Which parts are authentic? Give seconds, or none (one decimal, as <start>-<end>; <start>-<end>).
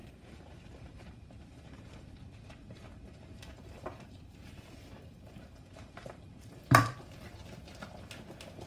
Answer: 7.4-8.7